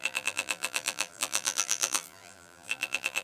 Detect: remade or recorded remade